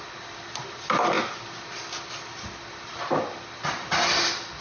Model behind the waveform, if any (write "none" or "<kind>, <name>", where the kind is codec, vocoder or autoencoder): none